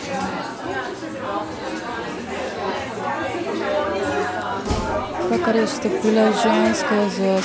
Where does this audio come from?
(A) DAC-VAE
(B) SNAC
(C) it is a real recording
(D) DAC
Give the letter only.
C